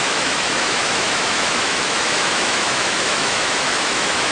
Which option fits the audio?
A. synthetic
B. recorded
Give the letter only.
A